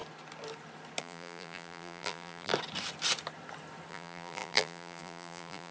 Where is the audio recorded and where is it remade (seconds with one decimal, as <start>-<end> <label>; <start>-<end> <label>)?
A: 0.0-1.0 recorded; 1.0-2.5 remade; 2.5-3.9 recorded; 3.9-5.7 remade